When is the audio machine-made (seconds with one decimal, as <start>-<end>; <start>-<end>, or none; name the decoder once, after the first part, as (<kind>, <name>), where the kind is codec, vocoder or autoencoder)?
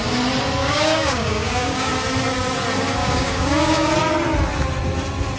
0.6-1.9 (codec, DAC); 3.0-3.9